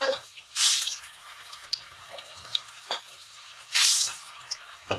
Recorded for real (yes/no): no